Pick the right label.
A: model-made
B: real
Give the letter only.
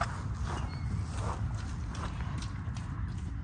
B